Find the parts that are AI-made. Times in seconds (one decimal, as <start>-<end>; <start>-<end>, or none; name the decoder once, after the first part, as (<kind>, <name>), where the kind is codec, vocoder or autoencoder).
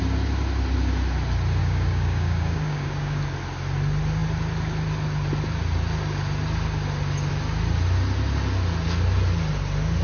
1.6-3.2 (codec, DAC)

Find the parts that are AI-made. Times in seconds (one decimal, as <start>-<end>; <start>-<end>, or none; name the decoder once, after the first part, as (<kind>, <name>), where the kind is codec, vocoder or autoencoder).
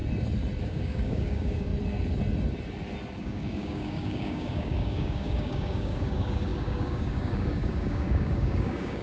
0.6-1.7 (codec, DAC); 3.2-9.0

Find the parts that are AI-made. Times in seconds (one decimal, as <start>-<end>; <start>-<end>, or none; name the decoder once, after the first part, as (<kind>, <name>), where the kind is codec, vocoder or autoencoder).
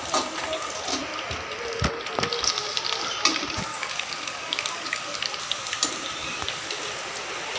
3.7-5.3 (codec, DAC); 6.2-6.8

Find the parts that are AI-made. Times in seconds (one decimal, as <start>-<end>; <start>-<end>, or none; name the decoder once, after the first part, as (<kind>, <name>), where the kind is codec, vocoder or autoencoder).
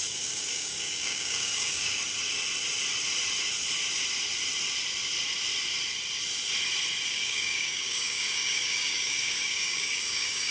0.0-2.0 (codec, DAC); 7.1-10.5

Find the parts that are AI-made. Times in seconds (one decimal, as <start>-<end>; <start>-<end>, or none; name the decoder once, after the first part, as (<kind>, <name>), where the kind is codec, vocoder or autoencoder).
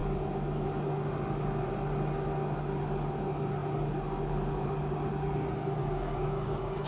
5.8-6.9 (codec, DAC)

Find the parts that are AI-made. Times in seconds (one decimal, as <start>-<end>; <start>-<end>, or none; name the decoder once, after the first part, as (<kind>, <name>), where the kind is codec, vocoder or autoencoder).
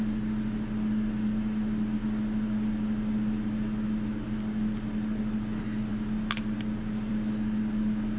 none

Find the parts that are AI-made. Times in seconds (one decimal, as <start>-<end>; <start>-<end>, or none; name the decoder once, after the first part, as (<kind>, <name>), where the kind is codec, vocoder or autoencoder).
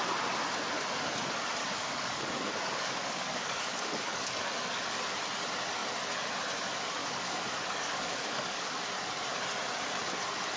1.6-4.8 (codec, DAC); 7.0-8.8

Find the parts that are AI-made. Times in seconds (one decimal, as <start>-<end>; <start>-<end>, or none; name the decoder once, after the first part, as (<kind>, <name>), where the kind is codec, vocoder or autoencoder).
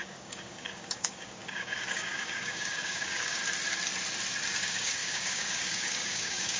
0.0-3.4 (codec, DAC); 4.6-6.6